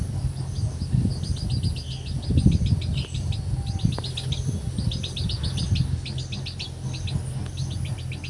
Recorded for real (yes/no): yes